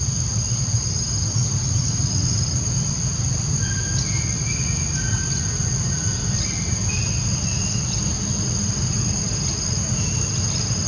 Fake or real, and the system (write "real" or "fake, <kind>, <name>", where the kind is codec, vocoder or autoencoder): real